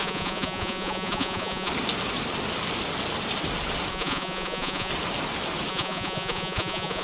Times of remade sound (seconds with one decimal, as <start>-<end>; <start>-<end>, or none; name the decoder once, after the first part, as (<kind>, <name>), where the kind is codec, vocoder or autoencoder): 0.0-1.7 (vocoder, Vocos); 3.9-4.9; 5.7-7.0